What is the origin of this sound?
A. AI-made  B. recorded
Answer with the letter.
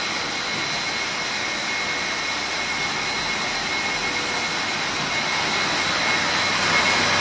B